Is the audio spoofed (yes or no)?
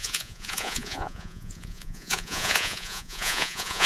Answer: yes